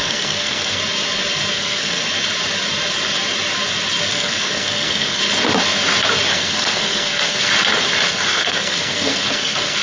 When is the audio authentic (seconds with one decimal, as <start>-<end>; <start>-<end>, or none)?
0.8-1.5; 2.0-4.1; 5.2-6.3; 7.5-8.1